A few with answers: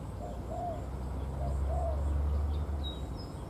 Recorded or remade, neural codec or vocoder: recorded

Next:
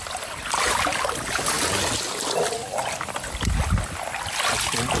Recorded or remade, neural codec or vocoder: recorded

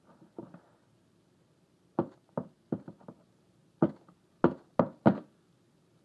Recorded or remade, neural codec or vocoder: recorded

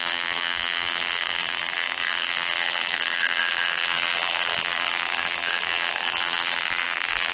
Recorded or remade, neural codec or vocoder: remade, vocoder, BigVGAN v2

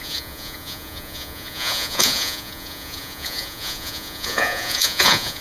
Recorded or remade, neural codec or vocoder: remade, vocoder, Vocos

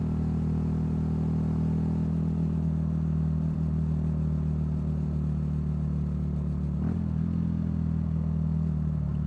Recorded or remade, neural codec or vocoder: recorded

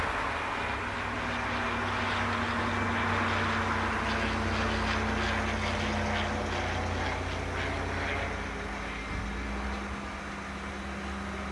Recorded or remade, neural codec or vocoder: recorded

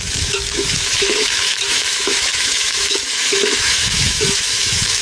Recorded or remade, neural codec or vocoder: remade, autoencoder, DAC-VAE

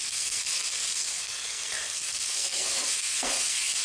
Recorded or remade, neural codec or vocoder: remade, codec, SNAC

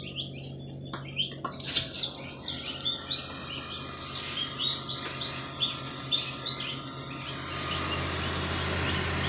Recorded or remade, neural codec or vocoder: recorded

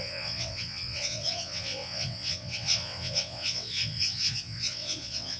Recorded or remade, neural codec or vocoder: remade, vocoder, WaveNeXt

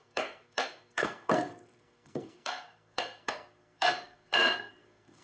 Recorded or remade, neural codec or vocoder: remade, codec, SNAC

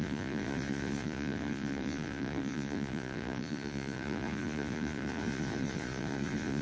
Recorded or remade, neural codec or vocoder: remade, vocoder, Vocos